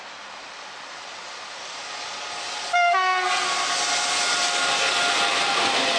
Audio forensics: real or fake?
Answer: real